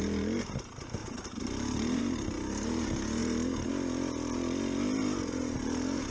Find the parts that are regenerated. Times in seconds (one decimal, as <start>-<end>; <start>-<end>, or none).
1.0-2.0

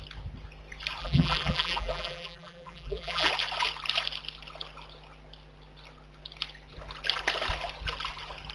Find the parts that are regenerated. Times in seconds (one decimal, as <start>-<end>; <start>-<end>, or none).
1.0-3.3